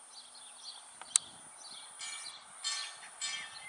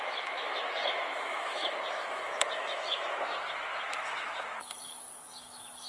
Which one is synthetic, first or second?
second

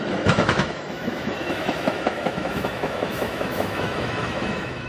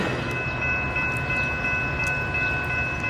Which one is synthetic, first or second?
first